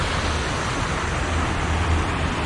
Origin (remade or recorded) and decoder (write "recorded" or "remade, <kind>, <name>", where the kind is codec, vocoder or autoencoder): recorded